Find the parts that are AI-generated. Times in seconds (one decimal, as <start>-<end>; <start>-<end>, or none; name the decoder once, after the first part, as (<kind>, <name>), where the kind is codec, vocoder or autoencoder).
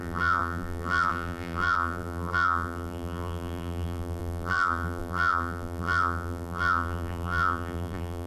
0.0-8.3 (vocoder, BigVGAN v2)